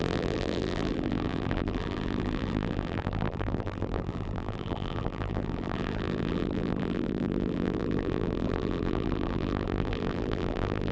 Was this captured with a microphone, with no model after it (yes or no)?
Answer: no